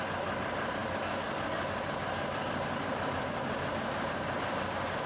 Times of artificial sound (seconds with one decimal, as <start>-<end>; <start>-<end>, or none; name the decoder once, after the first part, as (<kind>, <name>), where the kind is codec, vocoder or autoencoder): none